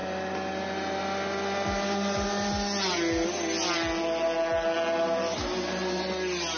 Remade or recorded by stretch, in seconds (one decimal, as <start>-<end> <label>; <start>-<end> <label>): 0.0-6.6 recorded